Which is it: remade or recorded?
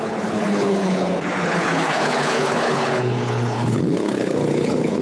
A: remade